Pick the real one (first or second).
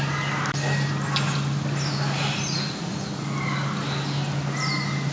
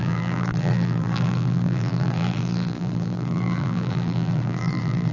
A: first